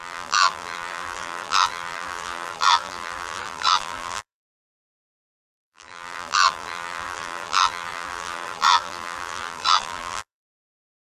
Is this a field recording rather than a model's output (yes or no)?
no